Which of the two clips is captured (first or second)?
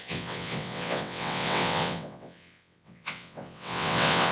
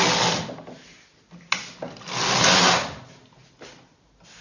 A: second